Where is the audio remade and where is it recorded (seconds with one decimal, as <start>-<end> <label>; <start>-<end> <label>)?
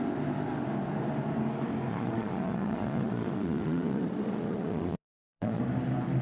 0.0-1.9 recorded; 1.9-5.6 remade; 5.6-6.2 recorded